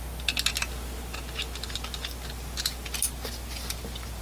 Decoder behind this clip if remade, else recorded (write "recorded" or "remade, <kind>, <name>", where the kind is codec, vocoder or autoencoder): recorded